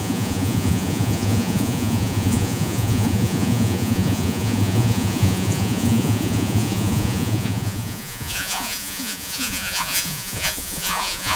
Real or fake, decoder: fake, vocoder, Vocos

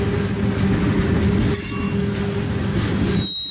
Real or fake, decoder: real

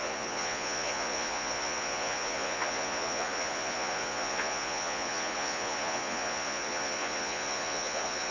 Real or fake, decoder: fake, vocoder, Vocos